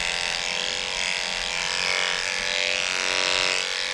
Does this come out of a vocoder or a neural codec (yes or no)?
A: no